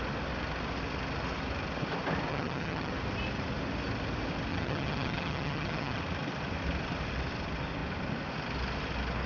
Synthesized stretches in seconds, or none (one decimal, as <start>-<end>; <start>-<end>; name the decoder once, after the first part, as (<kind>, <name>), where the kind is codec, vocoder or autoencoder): 2.3-2.9 (vocoder, HiFi-GAN); 4.5-6.0